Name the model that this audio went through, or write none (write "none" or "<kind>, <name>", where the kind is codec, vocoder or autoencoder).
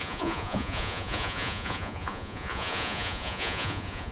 vocoder, Vocos